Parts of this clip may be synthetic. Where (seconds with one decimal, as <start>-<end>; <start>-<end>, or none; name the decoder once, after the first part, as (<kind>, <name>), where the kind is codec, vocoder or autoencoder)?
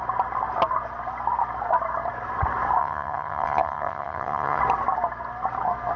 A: 2.8-4.6 (vocoder, HiFi-GAN)